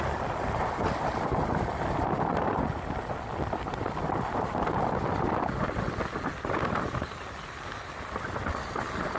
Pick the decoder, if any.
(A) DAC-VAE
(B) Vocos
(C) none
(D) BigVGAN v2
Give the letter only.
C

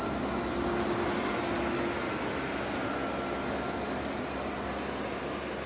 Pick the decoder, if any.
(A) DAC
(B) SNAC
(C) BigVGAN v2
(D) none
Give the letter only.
D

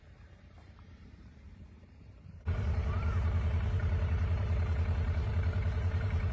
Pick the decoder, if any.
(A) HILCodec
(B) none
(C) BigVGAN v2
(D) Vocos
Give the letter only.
C